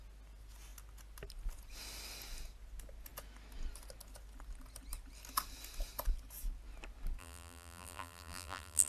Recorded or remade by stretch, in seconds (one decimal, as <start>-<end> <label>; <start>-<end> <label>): 0.0-7.2 recorded; 7.2-8.9 remade